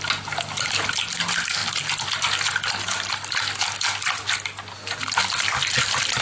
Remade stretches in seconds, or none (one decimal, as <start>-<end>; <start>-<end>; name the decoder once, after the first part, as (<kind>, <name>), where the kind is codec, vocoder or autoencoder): none